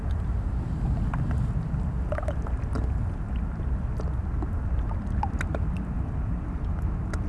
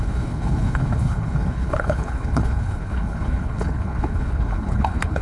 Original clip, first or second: first